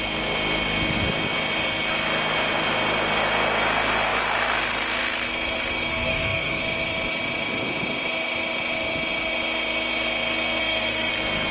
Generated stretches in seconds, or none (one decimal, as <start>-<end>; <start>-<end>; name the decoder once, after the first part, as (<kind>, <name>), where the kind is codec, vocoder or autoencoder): 5.9-6.6 (codec, SNAC); 10.6-11.1